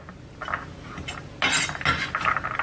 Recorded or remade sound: recorded